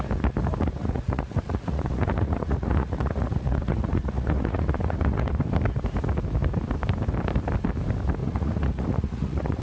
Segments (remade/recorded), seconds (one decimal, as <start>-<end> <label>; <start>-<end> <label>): 0.0-0.8 recorded; 0.8-5.4 remade; 5.4-8.2 recorded; 8.2-9.6 remade